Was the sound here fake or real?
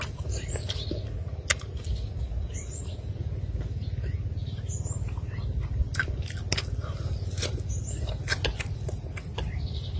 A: real